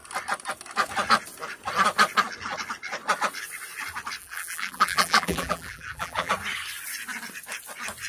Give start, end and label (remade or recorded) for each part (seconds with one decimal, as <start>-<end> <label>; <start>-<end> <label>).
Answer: 0.0-4.2 recorded; 4.2-6.3 remade; 6.3-8.1 recorded